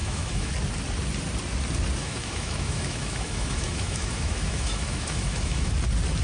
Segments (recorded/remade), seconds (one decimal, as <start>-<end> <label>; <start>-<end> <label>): 0.0-0.5 remade; 0.5-2.0 recorded; 2.0-5.7 remade; 5.7-6.2 recorded